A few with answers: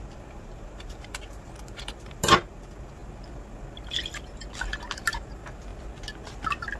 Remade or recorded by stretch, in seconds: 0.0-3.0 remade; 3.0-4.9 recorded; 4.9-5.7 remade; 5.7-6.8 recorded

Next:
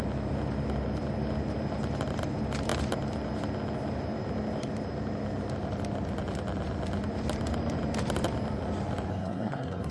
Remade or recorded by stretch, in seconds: 0.0-9.1 recorded; 9.1-9.9 remade

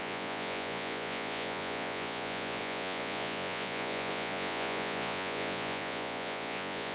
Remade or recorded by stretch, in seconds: 0.0-6.9 remade